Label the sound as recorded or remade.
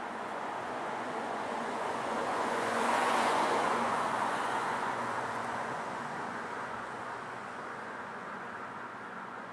remade